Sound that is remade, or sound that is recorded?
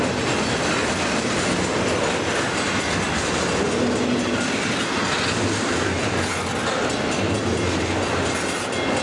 recorded